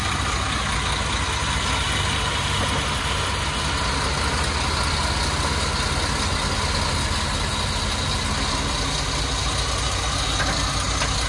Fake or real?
real